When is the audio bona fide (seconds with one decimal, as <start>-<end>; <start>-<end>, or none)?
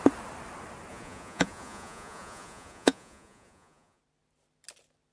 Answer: 0.0-0.9; 4.0-5.1